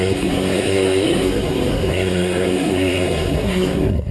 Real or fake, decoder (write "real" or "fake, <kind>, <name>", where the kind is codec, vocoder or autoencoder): fake, codec, SNAC